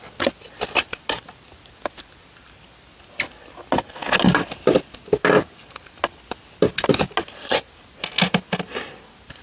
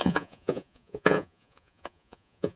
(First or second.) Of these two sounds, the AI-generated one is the second